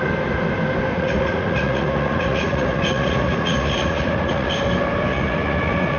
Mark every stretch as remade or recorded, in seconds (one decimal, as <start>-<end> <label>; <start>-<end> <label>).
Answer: 0.0-0.9 recorded; 0.9-4.5 remade; 4.5-5.1 recorded; 5.1-6.0 remade